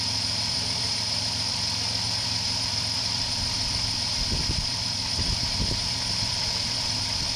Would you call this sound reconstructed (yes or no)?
yes